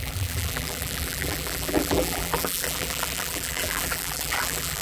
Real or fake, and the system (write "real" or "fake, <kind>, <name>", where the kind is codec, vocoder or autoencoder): fake, vocoder, BigVGAN v2